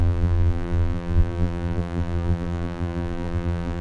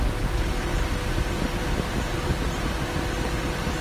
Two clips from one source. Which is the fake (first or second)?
first